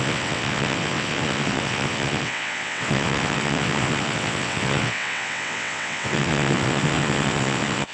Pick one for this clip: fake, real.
fake